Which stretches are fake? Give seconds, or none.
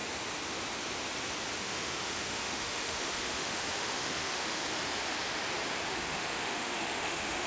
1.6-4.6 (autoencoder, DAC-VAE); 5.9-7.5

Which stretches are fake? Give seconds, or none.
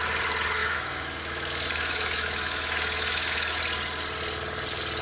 0.6-3.6 (autoencoder, DAC-VAE)